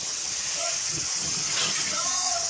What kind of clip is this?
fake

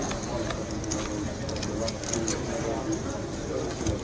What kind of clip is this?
real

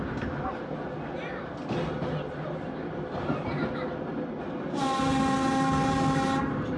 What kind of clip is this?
real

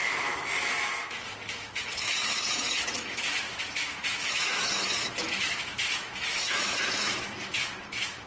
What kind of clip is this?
fake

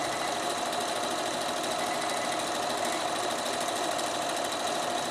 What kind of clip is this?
real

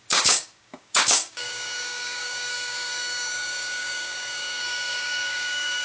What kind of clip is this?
fake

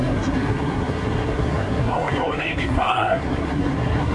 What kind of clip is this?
fake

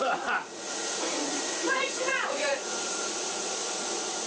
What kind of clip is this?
fake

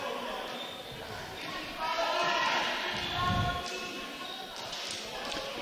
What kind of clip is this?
real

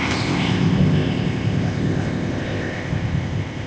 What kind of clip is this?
fake